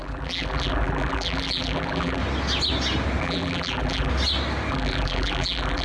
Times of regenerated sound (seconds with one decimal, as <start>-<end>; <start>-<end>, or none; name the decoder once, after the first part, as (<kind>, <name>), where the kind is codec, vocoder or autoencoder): 0.0-2.2 (vocoder, BigVGAN v2); 3.2-4.1; 4.7-5.8